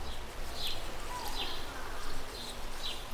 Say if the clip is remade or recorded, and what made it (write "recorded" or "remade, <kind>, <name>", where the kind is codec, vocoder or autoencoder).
recorded